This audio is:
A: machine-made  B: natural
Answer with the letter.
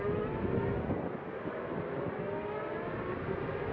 B